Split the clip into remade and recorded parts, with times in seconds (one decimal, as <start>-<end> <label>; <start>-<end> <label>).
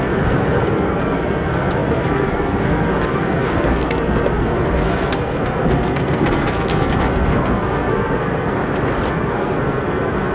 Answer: 0.0-8.6 remade; 8.6-9.1 recorded; 9.1-10.3 remade